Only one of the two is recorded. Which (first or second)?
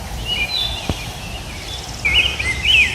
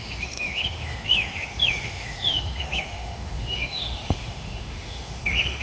first